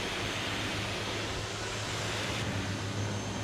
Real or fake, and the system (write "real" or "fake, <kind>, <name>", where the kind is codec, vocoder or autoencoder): real